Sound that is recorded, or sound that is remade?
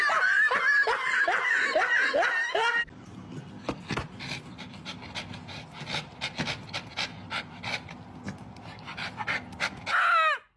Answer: recorded